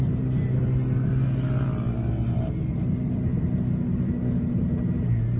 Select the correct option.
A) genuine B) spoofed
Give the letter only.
A